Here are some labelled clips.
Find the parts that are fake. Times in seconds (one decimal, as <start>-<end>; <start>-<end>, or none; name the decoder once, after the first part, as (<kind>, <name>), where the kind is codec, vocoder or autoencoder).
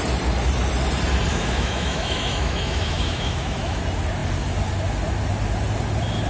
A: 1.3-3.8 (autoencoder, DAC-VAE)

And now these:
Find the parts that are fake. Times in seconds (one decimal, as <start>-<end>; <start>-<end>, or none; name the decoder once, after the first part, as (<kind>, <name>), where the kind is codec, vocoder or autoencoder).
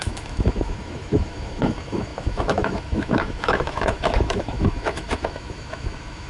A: 0.0-6.3 (autoencoder, DAC-VAE)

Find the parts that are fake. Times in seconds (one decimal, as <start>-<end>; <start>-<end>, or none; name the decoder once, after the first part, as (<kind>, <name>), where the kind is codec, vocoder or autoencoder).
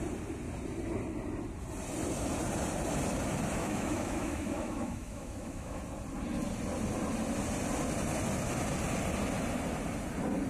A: 3.6-5.8 (autoencoder, DAC-VAE)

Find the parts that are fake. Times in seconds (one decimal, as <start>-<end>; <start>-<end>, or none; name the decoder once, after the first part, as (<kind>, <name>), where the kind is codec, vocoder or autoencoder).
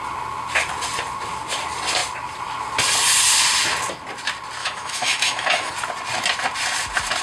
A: 4.6-5.7 (autoencoder, DAC-VAE)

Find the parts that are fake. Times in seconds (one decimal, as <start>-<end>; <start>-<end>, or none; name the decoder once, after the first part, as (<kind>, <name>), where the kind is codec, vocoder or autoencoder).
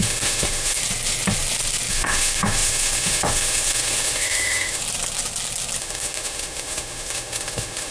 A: 0.0-0.8 (autoencoder, DAC-VAE); 1.9-4.8; 5.8-7.9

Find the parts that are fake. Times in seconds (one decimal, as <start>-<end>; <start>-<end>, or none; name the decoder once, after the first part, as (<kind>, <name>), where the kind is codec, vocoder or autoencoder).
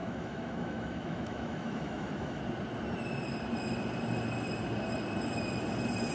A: 0.0-2.4 (autoencoder, DAC-VAE)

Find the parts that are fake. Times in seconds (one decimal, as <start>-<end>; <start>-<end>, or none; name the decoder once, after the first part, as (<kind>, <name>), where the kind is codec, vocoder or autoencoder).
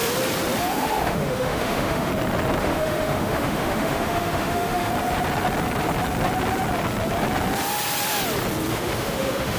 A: 0.6-2.1 (autoencoder, DAC-VAE); 2.6-4.9; 8.7-9.6